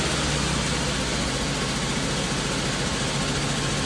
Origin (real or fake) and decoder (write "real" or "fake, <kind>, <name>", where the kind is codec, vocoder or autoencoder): real